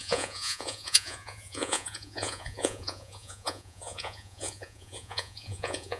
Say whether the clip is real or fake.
fake